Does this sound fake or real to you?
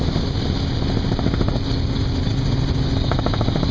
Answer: real